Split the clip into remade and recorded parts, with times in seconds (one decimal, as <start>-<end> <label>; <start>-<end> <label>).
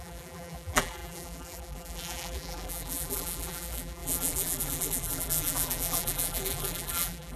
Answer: 0.0-7.4 remade